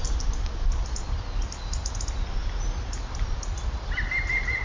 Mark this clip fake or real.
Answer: real